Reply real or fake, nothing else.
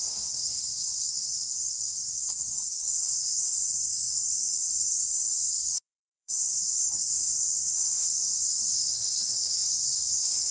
fake